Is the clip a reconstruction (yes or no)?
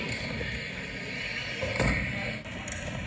no